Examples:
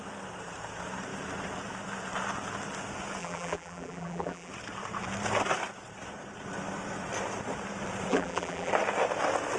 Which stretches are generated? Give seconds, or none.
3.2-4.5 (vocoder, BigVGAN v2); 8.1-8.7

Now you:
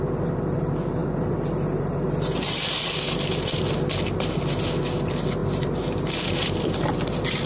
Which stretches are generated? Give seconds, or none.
none

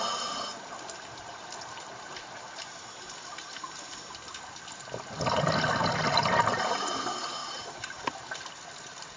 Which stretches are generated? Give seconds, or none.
1.1-3.0 (vocoder, BigVGAN v2); 7.4-8.0

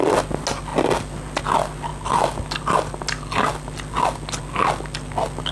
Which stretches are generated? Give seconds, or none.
none

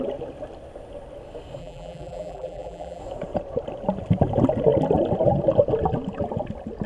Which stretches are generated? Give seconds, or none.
1.6-3.0 (vocoder, BigVGAN v2)